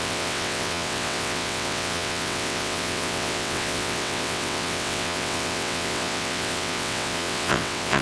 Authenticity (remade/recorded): remade